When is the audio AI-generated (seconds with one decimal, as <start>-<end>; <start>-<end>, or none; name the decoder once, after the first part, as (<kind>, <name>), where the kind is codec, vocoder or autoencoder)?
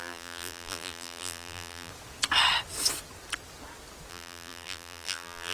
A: 0.0-1.9 (vocoder, BigVGAN v2); 4.1-5.5